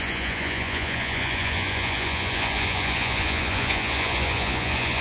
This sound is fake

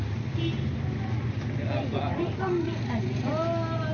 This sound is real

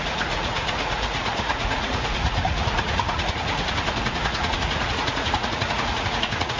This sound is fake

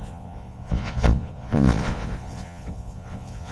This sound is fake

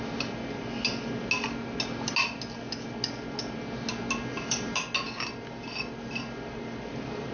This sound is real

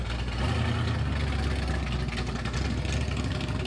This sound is real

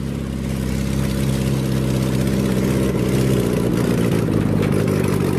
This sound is real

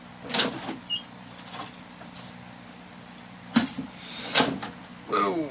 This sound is real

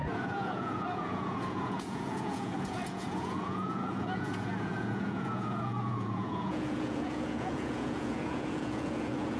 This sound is fake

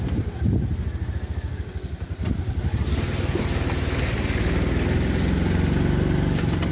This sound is real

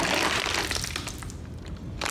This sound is real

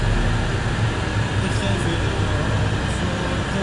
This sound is real